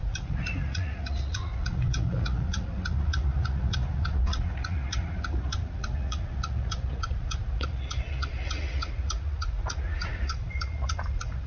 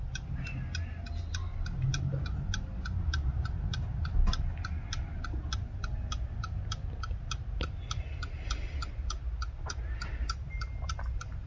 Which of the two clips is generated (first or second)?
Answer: first